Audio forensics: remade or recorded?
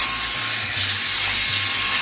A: recorded